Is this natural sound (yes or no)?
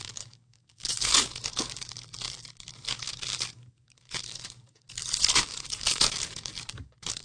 no